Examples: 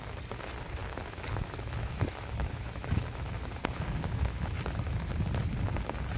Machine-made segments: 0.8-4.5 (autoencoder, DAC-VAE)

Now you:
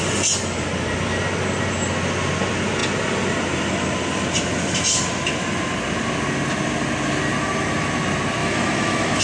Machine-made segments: 8.4-9.2 (autoencoder, DAC-VAE)

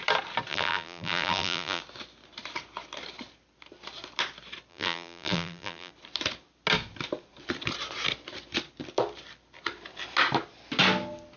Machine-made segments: 0.5-1.8 (vocoder, BigVGAN v2); 4.7-5.9

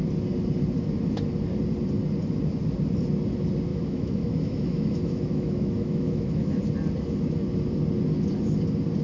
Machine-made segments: 3.7-6.6 (autoencoder, DAC-VAE)

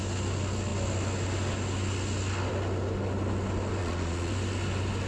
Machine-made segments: 3.8-4.3 (vocoder, Vocos)

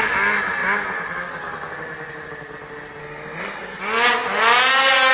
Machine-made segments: 3.0-3.8 (codec, SNAC)

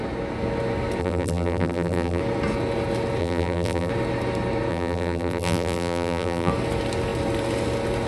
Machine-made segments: 1.0-2.2 (vocoder, BigVGAN v2); 3.2-3.9; 4.7-6.5

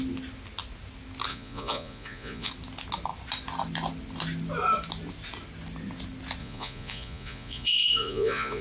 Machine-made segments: 1.3-2.5 (vocoder, Vocos); 6.4-8.6